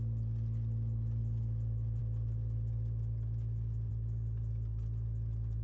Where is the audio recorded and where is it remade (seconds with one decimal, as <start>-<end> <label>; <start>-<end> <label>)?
0.0-5.6 recorded